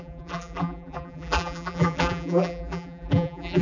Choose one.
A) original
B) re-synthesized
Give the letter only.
B